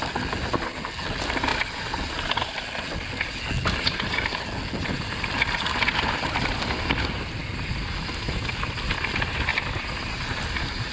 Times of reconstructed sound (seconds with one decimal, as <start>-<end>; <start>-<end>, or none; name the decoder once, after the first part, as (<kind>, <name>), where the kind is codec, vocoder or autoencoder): 1.5-2.7 (vocoder, BigVGAN v2); 9.5-10.1